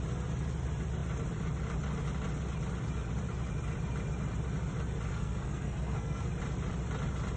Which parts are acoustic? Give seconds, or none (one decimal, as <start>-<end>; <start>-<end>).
0.0-5.1; 6.3-7.4